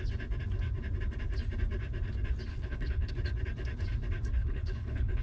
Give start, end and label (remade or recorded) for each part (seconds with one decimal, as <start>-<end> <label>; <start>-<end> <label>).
0.0-2.5 recorded; 2.5-3.1 remade; 3.1-4.4 recorded; 4.4-5.2 remade